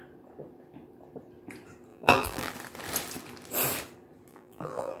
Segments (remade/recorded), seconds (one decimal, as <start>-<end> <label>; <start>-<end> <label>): 0.0-1.9 recorded; 1.9-2.5 remade; 2.5-4.3 recorded; 4.3-5.0 remade